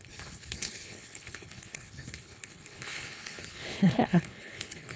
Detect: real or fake fake